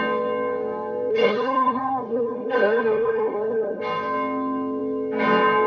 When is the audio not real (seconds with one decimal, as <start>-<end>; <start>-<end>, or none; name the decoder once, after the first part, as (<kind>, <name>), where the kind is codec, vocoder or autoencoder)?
1.1-3.8 (codec, SNAC)